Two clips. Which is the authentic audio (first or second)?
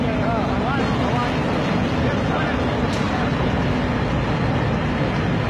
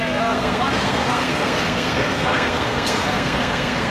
first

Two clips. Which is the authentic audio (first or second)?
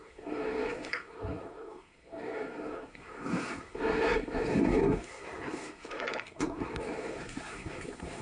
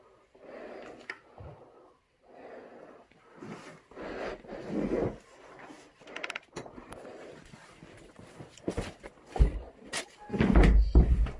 second